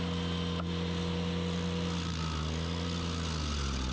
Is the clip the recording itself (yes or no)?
yes